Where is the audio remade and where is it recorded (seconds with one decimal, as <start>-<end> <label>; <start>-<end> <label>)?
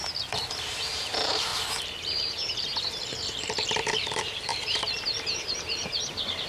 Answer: 0.0-0.7 recorded; 0.7-1.5 remade; 1.5-3.1 recorded; 3.1-6.5 remade